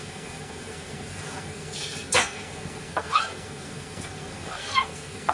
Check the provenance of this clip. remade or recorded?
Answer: remade